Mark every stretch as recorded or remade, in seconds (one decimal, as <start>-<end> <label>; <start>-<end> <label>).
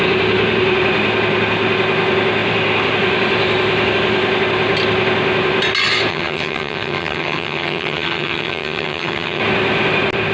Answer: 0.0-6.1 recorded; 6.1-9.4 remade; 9.4-10.3 recorded